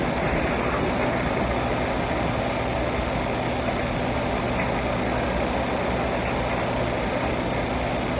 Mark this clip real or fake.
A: real